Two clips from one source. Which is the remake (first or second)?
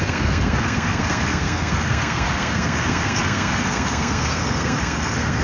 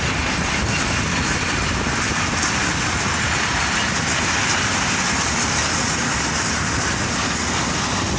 first